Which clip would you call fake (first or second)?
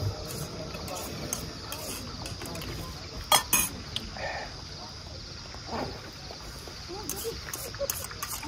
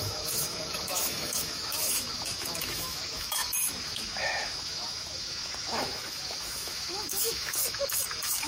second